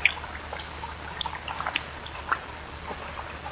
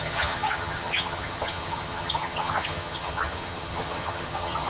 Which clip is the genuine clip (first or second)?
first